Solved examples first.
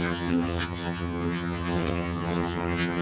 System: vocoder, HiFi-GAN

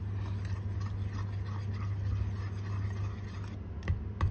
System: none